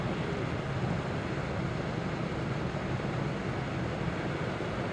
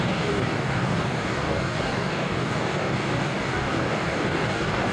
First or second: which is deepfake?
second